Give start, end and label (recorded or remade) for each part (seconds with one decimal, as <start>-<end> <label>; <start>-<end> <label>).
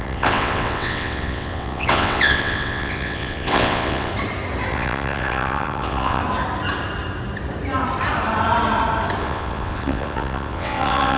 0.0-4.1 remade; 4.1-4.7 recorded; 4.7-6.2 remade; 6.2-9.2 recorded; 9.2-11.2 remade